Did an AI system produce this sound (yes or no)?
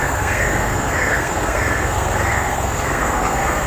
yes